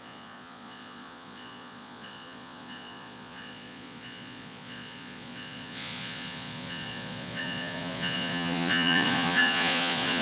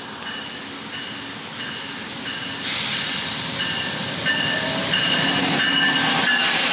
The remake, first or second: first